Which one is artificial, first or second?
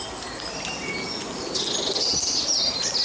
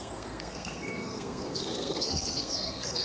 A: second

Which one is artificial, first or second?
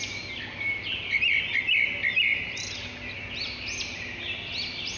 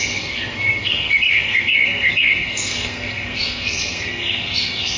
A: second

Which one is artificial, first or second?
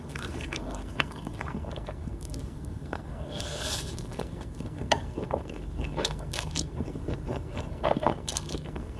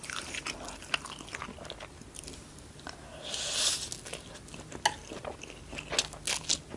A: first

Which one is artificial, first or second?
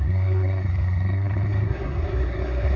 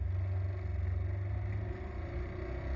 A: first